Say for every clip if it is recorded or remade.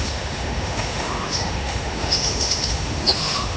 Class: remade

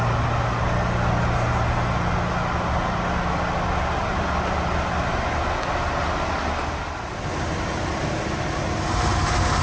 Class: recorded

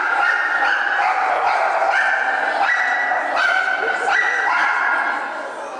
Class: recorded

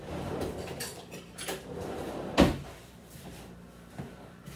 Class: remade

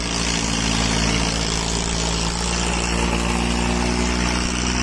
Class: recorded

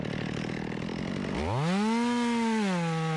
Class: recorded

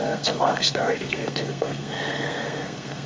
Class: remade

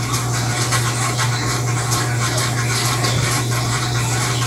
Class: recorded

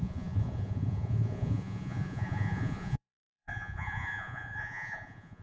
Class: remade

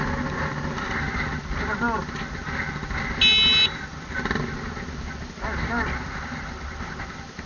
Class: recorded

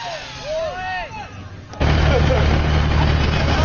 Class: recorded